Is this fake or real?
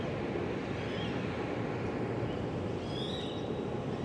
real